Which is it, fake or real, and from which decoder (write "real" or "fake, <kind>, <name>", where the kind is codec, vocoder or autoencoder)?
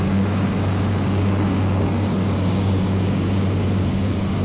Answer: fake, codec, DAC